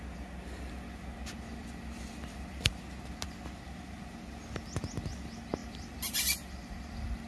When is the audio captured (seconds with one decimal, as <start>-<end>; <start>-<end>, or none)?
0.0-1.6; 2.8-5.6

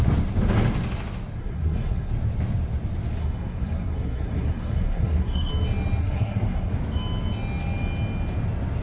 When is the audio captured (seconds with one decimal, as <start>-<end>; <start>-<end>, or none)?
0.0-1.4; 2.1-3.2; 5.5-6.0; 6.7-8.8

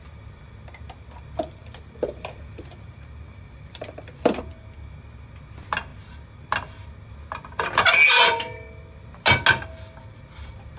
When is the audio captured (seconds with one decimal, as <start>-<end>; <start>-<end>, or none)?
0.0-1.6; 4.5-10.8